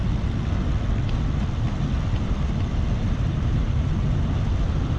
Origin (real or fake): fake